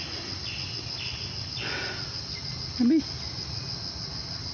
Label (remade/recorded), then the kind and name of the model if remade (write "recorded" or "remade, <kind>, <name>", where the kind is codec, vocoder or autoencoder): recorded